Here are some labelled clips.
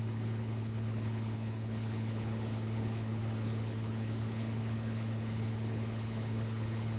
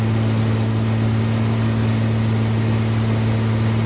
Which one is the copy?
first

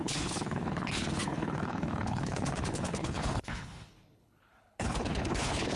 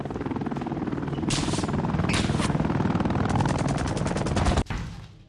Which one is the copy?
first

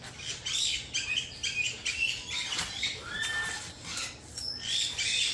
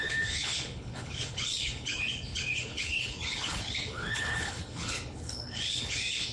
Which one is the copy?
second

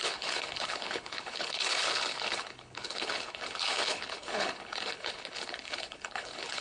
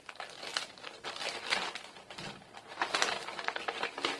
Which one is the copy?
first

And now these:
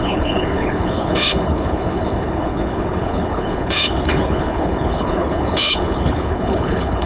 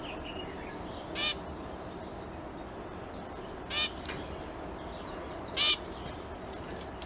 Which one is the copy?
first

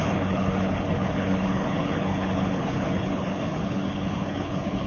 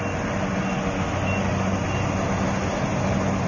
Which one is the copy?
first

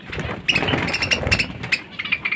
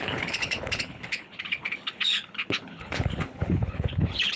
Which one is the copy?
second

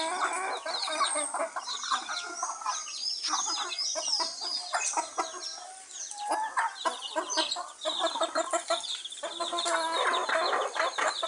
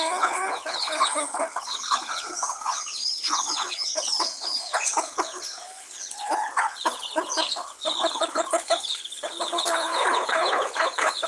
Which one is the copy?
second